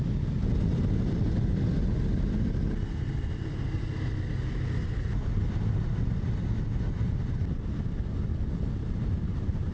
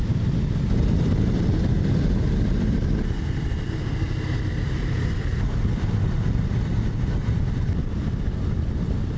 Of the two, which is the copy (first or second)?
second